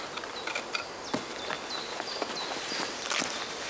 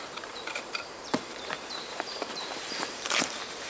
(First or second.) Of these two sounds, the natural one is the first